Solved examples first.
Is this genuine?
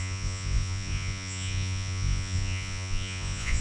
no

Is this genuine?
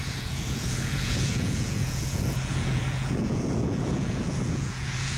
no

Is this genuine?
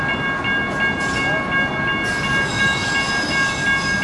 yes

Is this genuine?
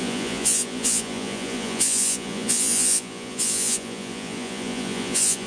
no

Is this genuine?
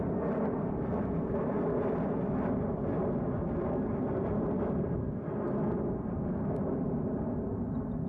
yes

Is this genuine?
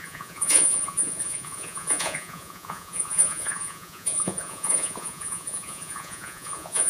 no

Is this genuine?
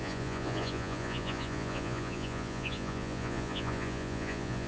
no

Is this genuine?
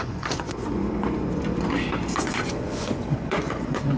no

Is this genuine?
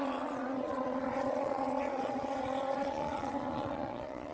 no